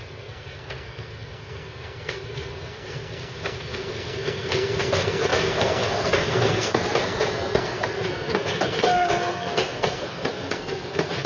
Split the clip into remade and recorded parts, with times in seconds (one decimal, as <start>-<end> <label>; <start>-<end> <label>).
0.0-11.3 remade